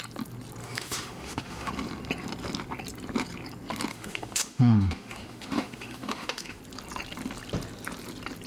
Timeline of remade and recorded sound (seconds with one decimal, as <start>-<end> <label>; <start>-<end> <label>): 0.0-0.6 recorded; 0.6-1.7 remade; 1.7-3.9 recorded; 3.9-6.6 remade; 6.6-8.5 recorded

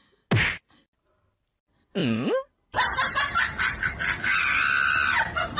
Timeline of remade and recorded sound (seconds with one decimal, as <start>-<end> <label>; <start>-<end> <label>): 0.0-5.6 recorded

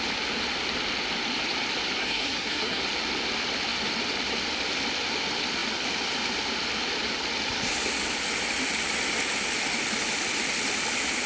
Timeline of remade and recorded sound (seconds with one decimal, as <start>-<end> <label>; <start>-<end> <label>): 0.0-2.0 recorded; 2.0-2.8 remade; 2.8-11.3 recorded

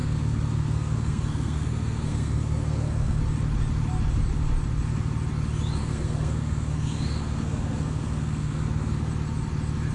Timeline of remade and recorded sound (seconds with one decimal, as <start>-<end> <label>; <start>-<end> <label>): 0.0-3.2 remade; 3.2-5.8 recorded; 5.8-9.1 remade; 9.1-9.9 recorded

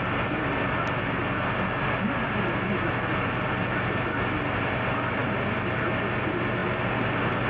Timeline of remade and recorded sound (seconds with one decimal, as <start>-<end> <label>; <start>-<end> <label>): 0.0-7.5 recorded

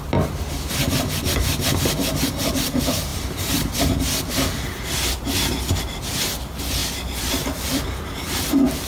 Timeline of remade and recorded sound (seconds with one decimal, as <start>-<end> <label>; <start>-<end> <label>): 0.0-3.1 recorded; 3.1-3.8 remade; 3.8-6.8 recorded; 6.8-8.0 remade; 8.0-8.9 recorded

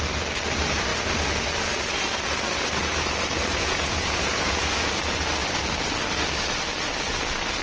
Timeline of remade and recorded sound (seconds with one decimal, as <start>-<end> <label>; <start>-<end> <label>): 0.0-3.5 recorded; 3.5-4.9 remade; 4.9-7.6 recorded